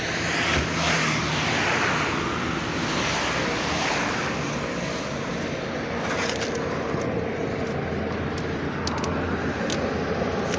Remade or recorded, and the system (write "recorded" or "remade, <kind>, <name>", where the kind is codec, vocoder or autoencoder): recorded